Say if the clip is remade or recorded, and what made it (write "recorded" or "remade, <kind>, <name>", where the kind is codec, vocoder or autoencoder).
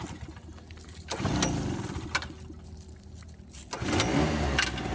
recorded